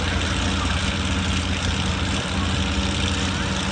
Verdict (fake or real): real